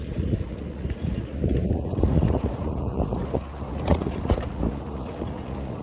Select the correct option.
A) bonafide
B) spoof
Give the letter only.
B